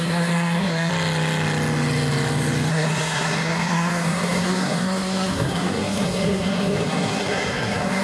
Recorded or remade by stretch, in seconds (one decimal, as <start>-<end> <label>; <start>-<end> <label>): 0.0-0.9 remade; 0.9-2.7 recorded; 2.7-8.0 remade